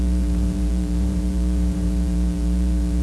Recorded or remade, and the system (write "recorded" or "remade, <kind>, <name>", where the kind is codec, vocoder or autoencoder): remade, vocoder, BigVGAN v2